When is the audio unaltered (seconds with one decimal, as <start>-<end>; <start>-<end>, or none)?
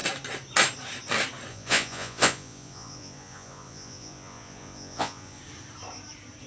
0.0-1.5; 5.4-6.5